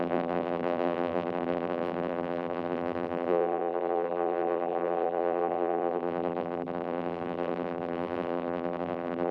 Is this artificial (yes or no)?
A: yes